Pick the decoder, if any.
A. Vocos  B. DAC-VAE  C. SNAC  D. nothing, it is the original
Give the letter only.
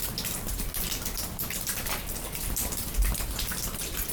D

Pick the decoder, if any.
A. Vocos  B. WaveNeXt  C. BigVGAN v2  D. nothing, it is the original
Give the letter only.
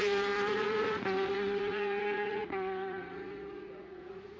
A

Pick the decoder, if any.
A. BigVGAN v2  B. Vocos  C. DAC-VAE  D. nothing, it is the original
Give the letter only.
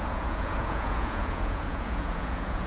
B